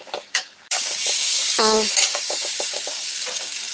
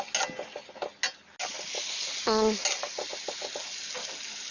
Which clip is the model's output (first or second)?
first